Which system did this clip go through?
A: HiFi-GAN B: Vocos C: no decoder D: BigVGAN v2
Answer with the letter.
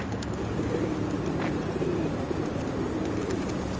D